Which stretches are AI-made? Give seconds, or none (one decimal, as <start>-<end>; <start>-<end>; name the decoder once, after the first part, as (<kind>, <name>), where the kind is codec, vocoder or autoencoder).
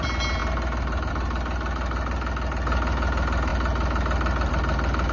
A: none